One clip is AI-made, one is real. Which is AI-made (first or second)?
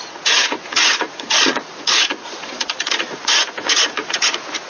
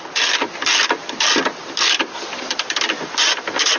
first